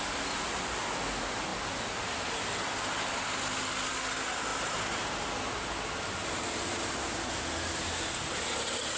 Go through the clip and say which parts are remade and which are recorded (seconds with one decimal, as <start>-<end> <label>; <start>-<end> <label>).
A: 0.0-4.5 recorded; 4.5-5.2 remade; 5.2-6.2 recorded; 6.2-6.9 remade; 6.9-9.0 recorded